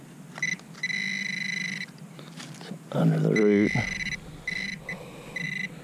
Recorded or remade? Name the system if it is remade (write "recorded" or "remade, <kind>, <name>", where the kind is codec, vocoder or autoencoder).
recorded